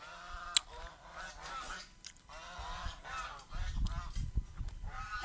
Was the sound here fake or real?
real